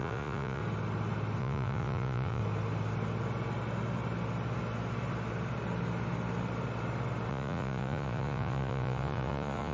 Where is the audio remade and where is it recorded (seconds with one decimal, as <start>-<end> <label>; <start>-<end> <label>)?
0.0-0.6 remade; 0.6-1.4 recorded; 1.4-2.4 remade; 2.4-7.3 recorded; 7.3-9.7 remade

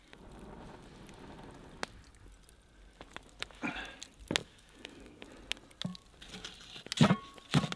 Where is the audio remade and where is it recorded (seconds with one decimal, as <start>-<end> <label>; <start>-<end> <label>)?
0.0-4.4 recorded; 4.4-5.3 remade; 5.3-7.8 recorded

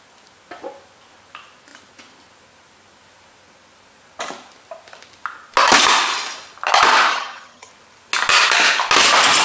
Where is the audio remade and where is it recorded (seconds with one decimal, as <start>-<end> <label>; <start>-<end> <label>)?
0.0-7.1 recorded; 7.1-7.7 remade; 7.7-9.4 recorded

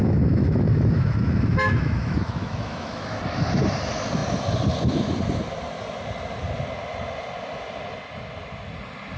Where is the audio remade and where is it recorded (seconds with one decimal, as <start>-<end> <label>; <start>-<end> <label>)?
0.0-3.2 remade; 3.2-9.2 recorded

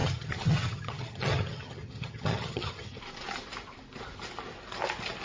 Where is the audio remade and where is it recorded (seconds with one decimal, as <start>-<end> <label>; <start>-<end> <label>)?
0.0-3.0 remade; 3.0-5.2 recorded

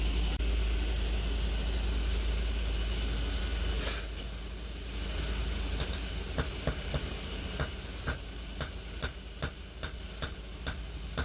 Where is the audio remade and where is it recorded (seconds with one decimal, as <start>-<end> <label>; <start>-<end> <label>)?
0.0-11.2 recorded

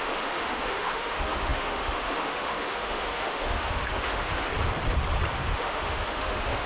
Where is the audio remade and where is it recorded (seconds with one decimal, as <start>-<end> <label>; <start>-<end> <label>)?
0.0-4.5 remade; 4.5-5.4 recorded; 5.4-6.7 remade

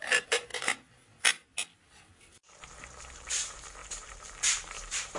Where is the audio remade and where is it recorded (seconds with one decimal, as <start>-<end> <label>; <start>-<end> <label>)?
0.0-0.5 remade; 0.5-2.8 recorded; 2.8-5.2 remade